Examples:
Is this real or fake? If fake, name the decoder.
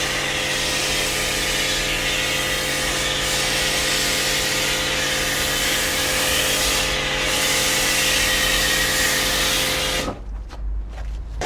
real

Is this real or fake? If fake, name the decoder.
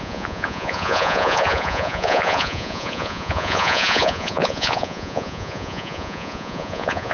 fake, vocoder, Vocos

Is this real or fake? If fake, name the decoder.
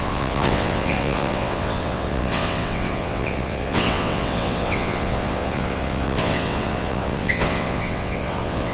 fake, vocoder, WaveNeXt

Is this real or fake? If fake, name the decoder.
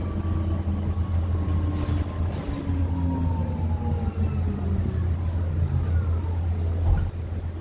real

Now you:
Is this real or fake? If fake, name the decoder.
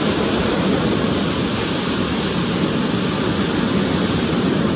real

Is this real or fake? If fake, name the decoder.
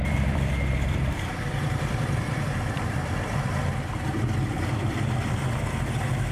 fake, vocoder, BigVGAN v2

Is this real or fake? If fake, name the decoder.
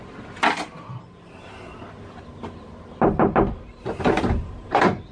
real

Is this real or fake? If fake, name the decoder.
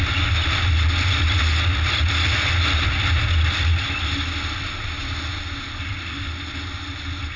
real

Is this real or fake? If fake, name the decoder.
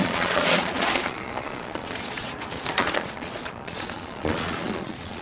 fake, vocoder, Vocos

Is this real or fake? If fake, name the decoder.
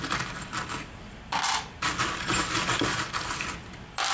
fake, vocoder, BigVGAN v2